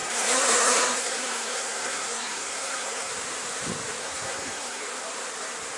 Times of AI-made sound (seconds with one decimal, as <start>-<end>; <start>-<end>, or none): 0.0-3.1; 4.0-4.8